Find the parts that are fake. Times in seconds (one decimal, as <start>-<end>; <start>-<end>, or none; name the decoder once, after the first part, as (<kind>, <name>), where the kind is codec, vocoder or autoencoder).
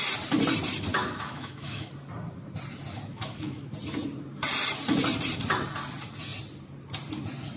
0.9-1.9 (autoencoder, DAC-VAE); 3.1-3.7